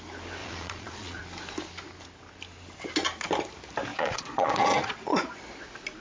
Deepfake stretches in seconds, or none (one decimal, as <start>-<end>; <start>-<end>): 0.4-1.2; 3.9-5.4